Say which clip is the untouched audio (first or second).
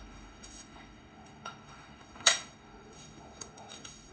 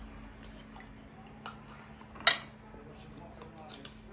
second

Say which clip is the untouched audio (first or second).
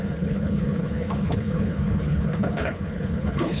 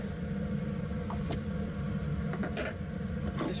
second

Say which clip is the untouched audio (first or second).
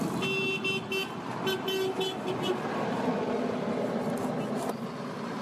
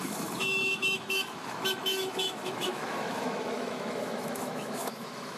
first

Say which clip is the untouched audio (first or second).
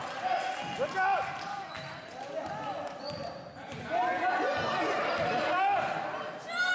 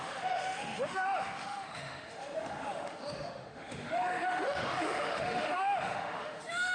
first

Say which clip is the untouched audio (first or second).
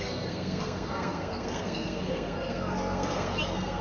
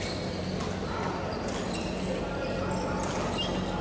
second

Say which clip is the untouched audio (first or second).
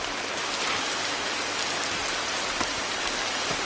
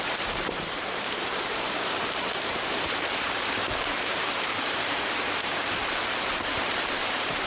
first